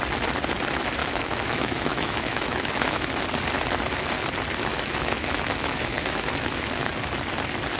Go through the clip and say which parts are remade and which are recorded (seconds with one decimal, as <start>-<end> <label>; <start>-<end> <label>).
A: 0.0-1.0 recorded; 1.0-3.1 remade; 3.1-4.7 recorded; 4.7-6.9 remade; 6.9-7.8 recorded